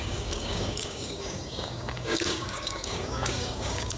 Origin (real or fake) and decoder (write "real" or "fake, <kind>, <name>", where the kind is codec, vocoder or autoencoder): fake, codec, DAC